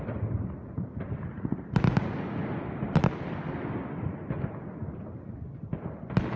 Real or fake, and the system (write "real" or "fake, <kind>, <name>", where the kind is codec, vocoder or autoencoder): real